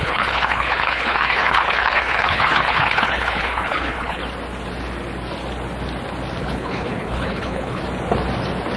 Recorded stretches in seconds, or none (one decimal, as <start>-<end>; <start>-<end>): 4.2-6.4; 7.8-8.8